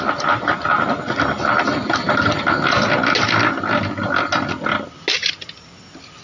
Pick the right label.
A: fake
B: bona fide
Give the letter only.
B